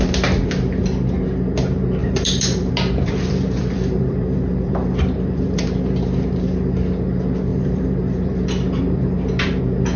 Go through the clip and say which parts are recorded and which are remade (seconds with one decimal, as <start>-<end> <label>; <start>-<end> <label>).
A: 0.0-2.0 recorded; 2.0-5.6 remade; 5.6-7.5 recorded; 7.5-9.6 remade; 9.6-10.0 recorded